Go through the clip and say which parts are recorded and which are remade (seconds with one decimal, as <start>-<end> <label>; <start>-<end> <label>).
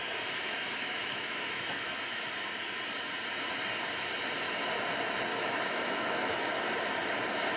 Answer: 0.0-0.4 recorded; 0.4-2.3 remade; 2.3-5.3 recorded; 5.3-6.5 remade; 6.5-7.6 recorded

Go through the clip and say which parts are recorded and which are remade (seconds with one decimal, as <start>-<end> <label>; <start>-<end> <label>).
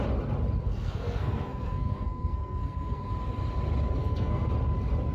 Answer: 0.0-0.6 recorded; 0.6-3.1 remade; 3.1-4.0 recorded; 4.0-4.5 remade; 4.5-5.1 recorded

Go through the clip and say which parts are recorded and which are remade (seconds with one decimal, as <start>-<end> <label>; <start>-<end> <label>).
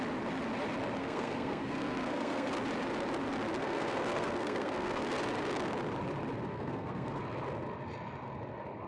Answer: 0.0-1.0 recorded; 1.0-2.5 remade; 2.5-3.6 recorded; 3.6-5.0 remade; 5.0-6.5 recorded; 6.5-7.2 remade; 7.2-8.9 recorded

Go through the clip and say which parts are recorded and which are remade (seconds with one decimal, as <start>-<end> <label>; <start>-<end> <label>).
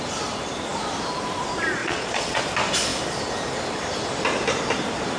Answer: 0.0-1.8 recorded; 1.8-2.4 remade; 2.4-5.2 recorded